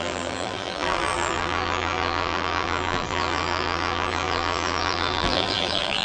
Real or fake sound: fake